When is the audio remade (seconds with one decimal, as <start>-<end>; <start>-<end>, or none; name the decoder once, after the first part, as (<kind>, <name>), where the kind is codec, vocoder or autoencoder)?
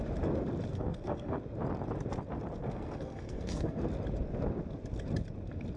0.7-1.4 (codec, SNAC); 2.6-3.9